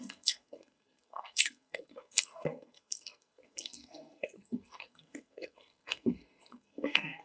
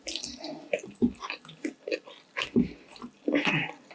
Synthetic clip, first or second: first